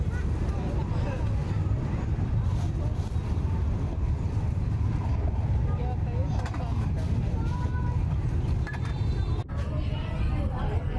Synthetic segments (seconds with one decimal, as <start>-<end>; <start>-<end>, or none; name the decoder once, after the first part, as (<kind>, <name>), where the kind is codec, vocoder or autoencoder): 1.4-2.7 (vocoder, BigVGAN v2)